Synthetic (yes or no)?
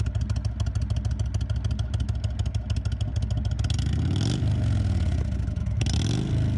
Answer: no